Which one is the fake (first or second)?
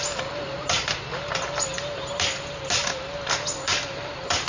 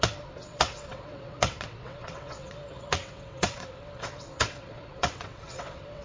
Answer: second